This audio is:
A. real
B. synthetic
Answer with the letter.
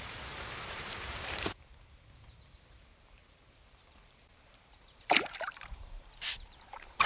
B